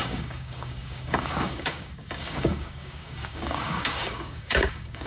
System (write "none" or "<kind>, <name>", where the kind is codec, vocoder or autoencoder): codec, DAC